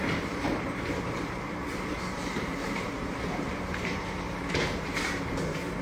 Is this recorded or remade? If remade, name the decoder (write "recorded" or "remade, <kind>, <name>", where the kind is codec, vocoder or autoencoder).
remade, vocoder, BigVGAN v2